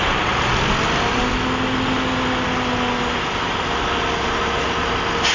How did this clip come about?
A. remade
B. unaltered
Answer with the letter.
B